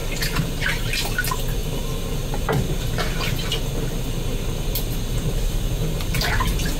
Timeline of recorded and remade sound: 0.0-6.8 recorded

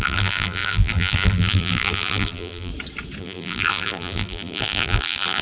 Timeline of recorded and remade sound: 0.0-2.7 remade; 2.7-3.2 recorded; 3.2-5.4 remade